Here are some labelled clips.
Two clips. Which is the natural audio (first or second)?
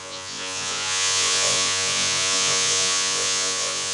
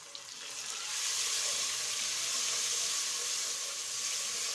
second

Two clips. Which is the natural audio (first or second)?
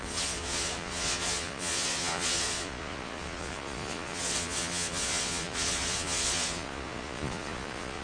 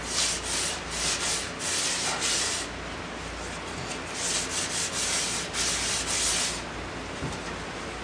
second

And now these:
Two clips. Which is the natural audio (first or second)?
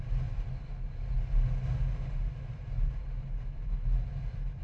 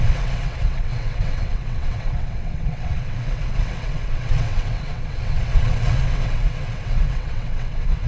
first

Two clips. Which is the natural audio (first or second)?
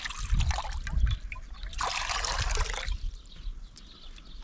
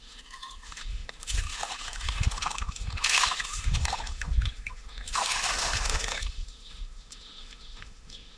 first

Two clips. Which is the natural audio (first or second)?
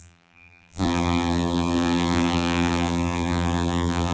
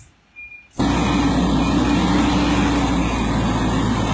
second